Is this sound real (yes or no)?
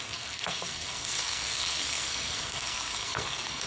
no